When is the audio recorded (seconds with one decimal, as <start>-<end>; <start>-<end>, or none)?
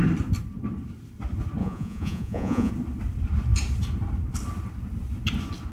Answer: 0.0-1.6; 2.7-5.7